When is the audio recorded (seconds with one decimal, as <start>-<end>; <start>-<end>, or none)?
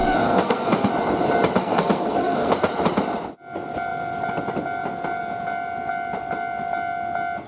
0.9-1.6; 2.5-7.5